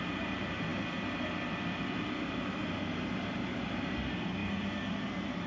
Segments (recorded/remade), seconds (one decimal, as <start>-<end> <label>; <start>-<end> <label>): 0.0-5.5 recorded